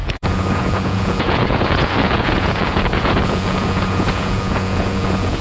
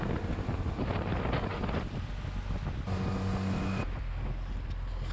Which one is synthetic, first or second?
first